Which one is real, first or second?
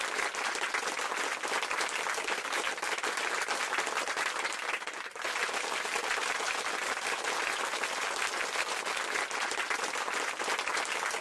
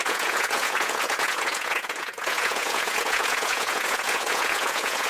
first